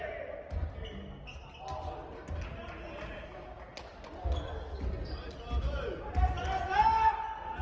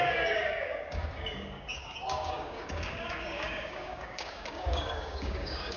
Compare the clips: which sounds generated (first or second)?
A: second